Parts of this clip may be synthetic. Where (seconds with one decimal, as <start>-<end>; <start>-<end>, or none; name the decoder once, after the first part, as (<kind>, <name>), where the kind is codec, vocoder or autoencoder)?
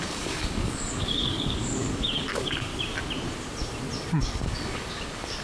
0.0-2.7 (codec, DAC); 4.2-5.4